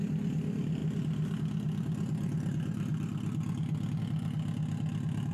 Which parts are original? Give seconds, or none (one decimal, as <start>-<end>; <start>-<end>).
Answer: 0.0-5.3